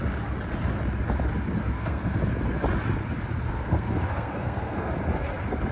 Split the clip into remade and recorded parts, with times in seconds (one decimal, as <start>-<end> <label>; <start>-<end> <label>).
0.0-1.6 recorded; 1.6-2.2 remade; 2.2-3.5 recorded; 3.5-4.9 remade; 4.9-5.7 recorded